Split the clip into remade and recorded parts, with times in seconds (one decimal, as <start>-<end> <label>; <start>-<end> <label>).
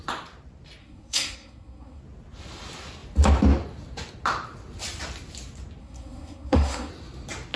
0.0-0.8 recorded; 0.8-2.0 remade; 2.0-5.8 recorded; 5.8-6.9 remade; 6.9-7.6 recorded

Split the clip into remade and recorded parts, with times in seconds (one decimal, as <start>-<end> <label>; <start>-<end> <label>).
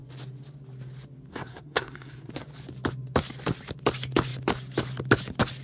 0.0-1.3 recorded; 1.3-2.3 remade; 2.3-5.6 recorded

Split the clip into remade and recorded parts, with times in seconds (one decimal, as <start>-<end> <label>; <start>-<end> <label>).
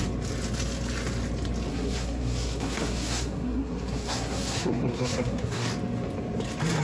0.0-1.7 recorded; 1.7-5.7 remade; 5.7-6.8 recorded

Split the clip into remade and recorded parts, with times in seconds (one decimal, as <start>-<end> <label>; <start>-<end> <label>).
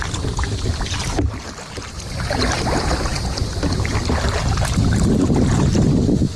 0.0-6.4 recorded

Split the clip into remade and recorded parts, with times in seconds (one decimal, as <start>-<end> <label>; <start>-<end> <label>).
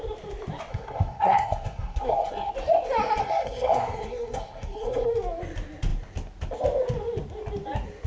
0.0-0.7 recorded; 0.7-2.5 remade; 2.5-3.2 recorded; 3.2-5.1 remade; 5.1-8.1 recorded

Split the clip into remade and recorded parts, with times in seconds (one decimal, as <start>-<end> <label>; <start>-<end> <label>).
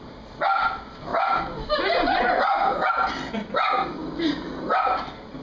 0.0-5.4 recorded